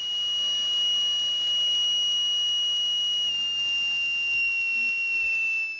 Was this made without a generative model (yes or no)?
yes